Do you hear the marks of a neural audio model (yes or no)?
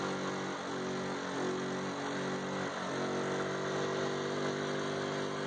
no